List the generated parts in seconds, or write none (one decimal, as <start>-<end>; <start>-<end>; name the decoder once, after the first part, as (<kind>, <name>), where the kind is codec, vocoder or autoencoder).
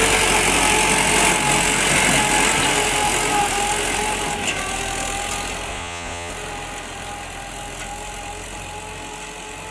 5.7-6.3 (vocoder, Vocos)